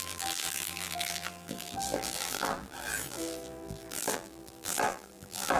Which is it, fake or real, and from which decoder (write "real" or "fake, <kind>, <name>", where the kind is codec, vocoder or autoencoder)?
fake, vocoder, BigVGAN v2